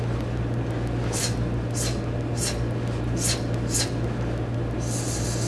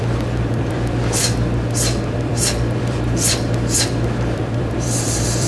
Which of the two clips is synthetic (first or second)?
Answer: second